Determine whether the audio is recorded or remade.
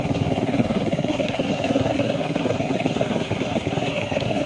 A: remade